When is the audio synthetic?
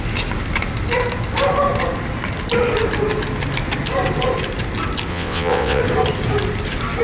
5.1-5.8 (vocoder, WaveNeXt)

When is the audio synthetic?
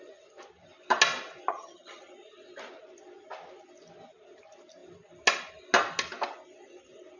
1.5-2.1 (vocoder, HiFi-GAN)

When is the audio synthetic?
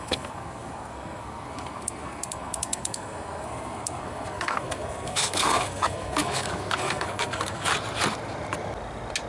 0.0-7.7 (codec, SNAC)